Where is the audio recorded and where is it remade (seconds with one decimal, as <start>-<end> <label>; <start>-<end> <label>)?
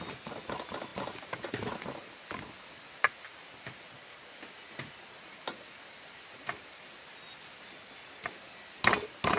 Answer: 0.0-9.4 recorded